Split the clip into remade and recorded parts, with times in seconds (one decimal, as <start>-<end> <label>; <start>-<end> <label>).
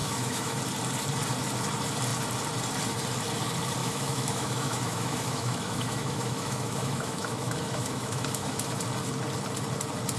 0.0-0.6 remade; 0.6-3.8 recorded; 3.8-8.8 remade; 8.8-10.2 recorded